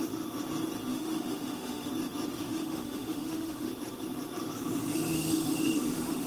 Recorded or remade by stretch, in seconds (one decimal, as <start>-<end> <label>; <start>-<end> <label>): 0.0-0.9 recorded; 0.9-1.9 remade; 1.9-2.3 recorded; 2.3-3.7 remade; 3.7-5.1 recorded; 5.1-6.3 remade